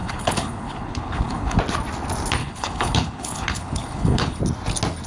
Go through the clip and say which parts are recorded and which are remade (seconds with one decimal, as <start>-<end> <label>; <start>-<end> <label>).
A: 0.0-1.6 remade; 1.6-2.4 recorded; 2.4-4.4 remade; 4.4-5.1 recorded

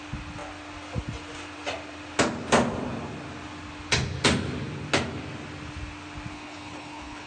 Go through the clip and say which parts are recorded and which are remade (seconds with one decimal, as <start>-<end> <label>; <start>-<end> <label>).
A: 0.0-6.3 recorded; 6.3-7.3 remade

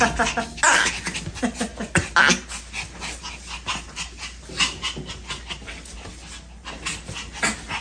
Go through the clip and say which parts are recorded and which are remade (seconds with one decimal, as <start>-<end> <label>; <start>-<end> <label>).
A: 0.0-7.8 recorded

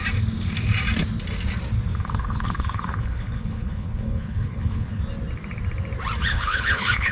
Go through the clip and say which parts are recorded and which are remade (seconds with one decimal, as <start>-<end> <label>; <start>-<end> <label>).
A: 0.0-1.9 recorded; 1.9-5.0 remade; 5.0-6.3 recorded; 6.3-7.1 remade

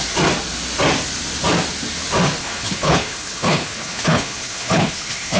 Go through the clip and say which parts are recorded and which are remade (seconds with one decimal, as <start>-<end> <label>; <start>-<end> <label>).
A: 0.0-2.4 recorded; 2.4-5.4 remade